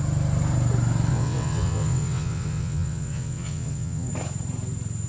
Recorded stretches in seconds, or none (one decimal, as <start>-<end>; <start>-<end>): 0.0-1.1; 4.1-5.1